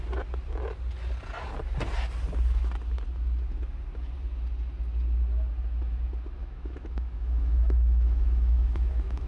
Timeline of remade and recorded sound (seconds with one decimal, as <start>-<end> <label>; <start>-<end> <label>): 0.0-6.4 recorded; 6.4-9.3 remade